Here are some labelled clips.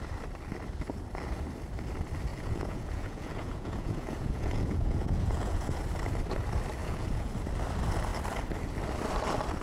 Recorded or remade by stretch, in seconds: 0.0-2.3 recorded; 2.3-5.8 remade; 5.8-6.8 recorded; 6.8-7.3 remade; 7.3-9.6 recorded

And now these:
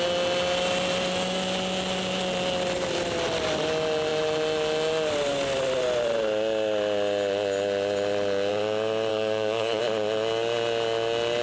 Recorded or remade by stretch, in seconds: 0.0-9.1 recorded; 9.1-9.8 remade; 9.8-11.4 recorded

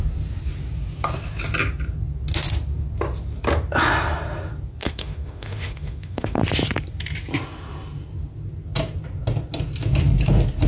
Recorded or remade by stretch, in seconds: 0.0-4.8 recorded; 4.8-6.4 remade; 6.4-10.7 recorded

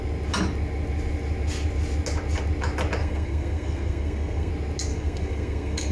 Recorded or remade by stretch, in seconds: 0.0-3.0 recorded; 3.0-4.5 remade; 4.5-4.9 recorded; 4.9-5.9 remade

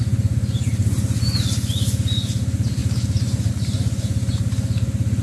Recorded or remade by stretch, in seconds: 0.0-5.2 recorded